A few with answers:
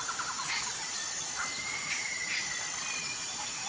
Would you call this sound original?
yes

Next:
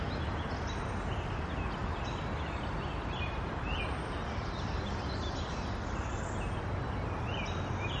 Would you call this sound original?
yes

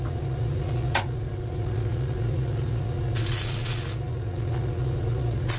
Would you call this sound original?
no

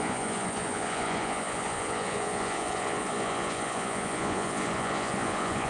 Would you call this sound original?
no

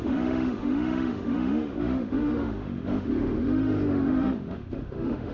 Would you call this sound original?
no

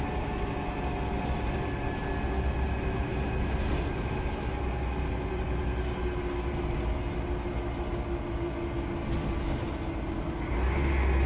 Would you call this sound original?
yes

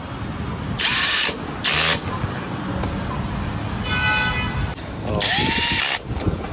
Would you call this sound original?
yes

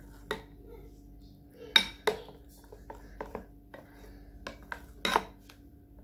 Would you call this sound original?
yes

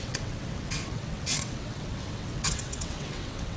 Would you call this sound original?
no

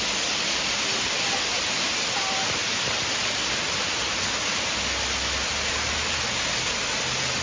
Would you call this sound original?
yes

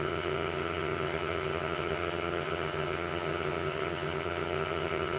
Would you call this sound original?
no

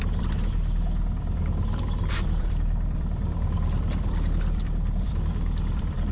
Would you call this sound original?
no